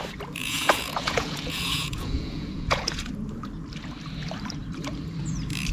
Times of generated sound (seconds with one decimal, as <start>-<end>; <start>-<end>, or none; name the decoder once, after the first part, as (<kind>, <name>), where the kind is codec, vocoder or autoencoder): 0.4-3.1 (vocoder, Vocos)